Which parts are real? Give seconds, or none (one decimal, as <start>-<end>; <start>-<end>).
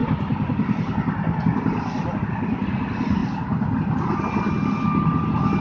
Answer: 0.0-5.6